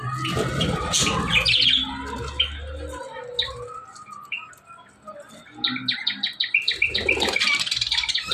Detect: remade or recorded recorded